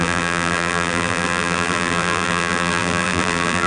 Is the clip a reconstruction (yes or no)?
yes